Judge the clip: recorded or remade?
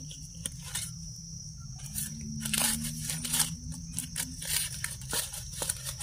remade